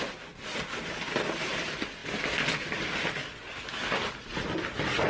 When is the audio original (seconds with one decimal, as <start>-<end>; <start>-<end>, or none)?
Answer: 0.0-5.1